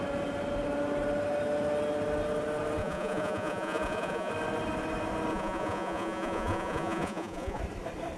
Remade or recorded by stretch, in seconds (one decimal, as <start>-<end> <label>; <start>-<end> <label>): 0.0-2.8 recorded; 2.8-4.3 remade; 4.3-5.3 recorded; 5.3-7.6 remade; 7.6-8.2 recorded